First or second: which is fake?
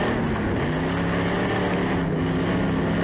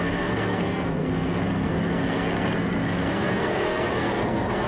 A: second